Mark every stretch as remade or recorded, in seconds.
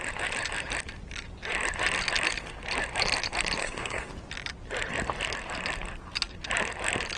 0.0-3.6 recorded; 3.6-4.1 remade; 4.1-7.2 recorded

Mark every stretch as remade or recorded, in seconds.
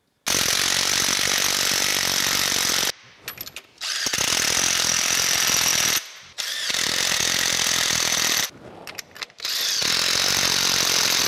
0.0-11.3 recorded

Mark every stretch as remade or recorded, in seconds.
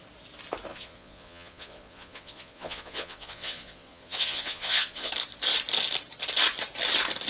0.0-0.7 recorded; 0.7-5.1 remade; 5.1-7.3 recorded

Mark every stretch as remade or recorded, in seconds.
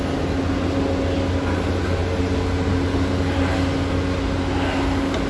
0.0-5.3 recorded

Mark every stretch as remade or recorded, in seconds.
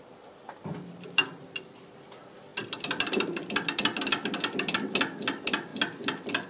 0.0-6.5 recorded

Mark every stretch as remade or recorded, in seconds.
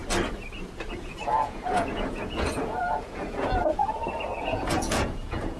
0.0-1.0 recorded; 1.0-3.8 remade; 3.8-4.4 recorded; 4.4-5.6 remade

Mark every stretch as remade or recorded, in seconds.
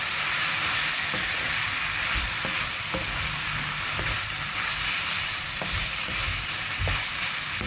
0.0-7.7 recorded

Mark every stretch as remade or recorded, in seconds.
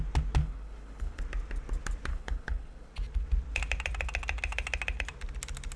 0.0-0.4 recorded; 0.4-1.2 remade; 1.2-2.1 recorded; 2.1-2.9 remade; 2.9-5.8 recorded